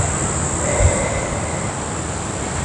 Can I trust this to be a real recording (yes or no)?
yes